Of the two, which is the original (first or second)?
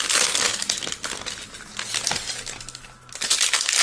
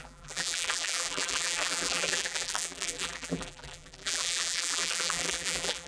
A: first